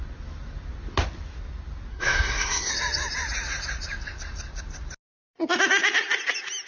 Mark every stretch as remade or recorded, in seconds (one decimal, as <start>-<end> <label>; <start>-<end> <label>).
0.0-1.9 recorded; 1.9-2.7 remade; 2.7-6.7 recorded